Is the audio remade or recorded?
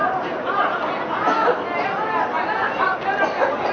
recorded